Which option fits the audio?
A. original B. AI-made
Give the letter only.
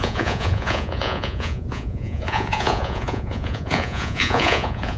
B